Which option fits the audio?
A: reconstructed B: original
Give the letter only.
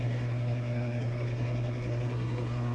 A